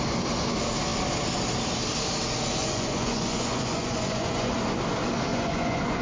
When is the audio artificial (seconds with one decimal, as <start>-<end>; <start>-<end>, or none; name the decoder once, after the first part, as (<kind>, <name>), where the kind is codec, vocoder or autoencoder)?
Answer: 2.6-4.5 (vocoder, Vocos); 5.3-6.0